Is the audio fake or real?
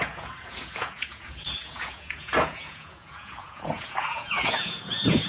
fake